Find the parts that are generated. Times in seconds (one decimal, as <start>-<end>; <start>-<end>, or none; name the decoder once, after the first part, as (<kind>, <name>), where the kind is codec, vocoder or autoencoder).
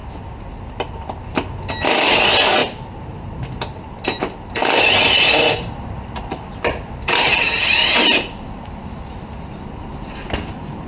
none